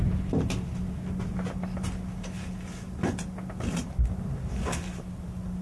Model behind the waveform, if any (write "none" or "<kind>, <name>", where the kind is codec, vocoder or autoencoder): none